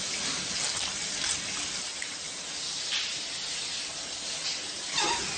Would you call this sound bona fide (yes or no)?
yes